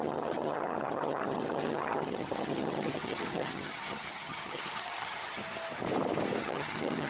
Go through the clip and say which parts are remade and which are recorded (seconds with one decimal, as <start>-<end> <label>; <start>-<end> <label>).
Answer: 0.0-5.4 remade; 5.4-6.4 recorded; 6.4-7.1 remade